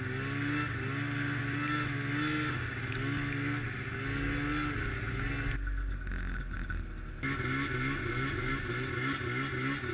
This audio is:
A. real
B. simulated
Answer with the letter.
A